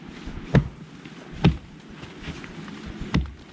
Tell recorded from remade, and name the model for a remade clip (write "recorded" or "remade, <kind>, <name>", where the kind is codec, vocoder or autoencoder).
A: recorded